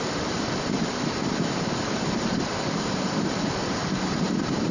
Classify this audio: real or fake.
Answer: fake